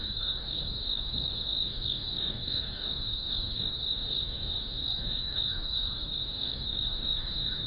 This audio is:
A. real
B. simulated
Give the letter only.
B